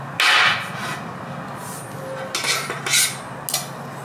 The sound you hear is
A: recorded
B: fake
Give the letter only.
A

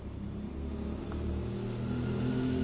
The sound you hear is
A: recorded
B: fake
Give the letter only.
A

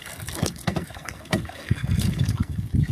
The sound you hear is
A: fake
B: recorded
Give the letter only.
A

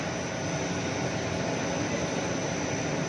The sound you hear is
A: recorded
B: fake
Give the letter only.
A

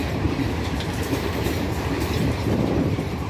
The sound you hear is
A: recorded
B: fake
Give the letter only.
B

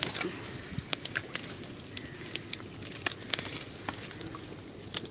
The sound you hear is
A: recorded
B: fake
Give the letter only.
A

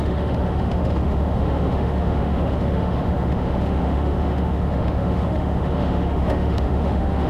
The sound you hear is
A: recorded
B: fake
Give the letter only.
B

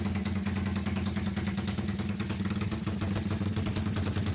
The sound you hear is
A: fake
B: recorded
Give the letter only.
B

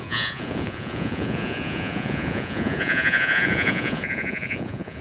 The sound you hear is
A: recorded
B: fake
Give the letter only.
B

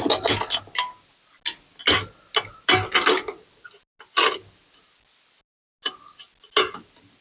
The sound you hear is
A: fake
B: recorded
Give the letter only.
B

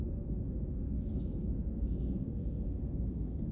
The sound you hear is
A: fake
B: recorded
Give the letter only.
A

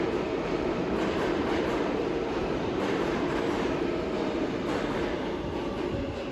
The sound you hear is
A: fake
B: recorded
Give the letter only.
B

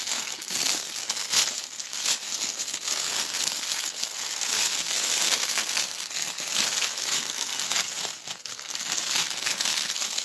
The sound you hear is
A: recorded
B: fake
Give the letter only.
B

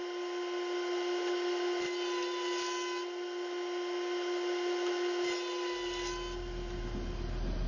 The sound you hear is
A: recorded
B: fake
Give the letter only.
A